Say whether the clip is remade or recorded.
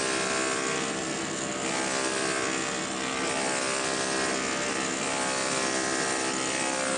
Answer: recorded